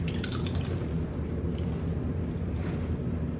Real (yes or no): yes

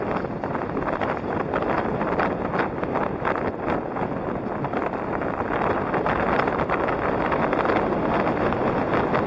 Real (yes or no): yes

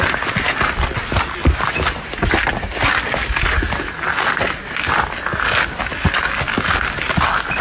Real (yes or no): yes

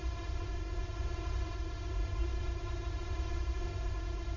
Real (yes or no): no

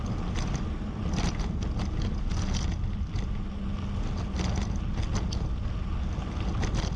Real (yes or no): yes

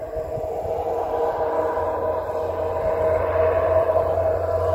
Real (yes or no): yes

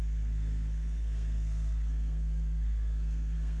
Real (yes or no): no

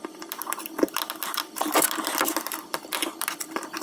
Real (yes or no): yes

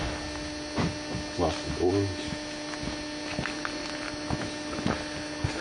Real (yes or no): yes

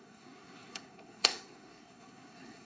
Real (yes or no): no